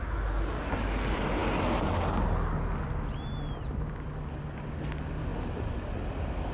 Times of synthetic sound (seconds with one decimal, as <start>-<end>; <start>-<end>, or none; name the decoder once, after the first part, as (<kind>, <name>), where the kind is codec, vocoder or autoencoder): none